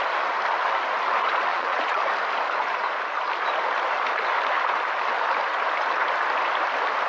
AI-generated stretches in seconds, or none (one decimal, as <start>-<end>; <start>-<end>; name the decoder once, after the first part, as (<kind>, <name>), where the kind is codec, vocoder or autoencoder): 1.5-2.0 (vocoder, Vocos)